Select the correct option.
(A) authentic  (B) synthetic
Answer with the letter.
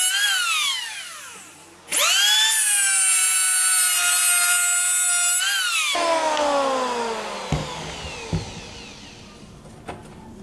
A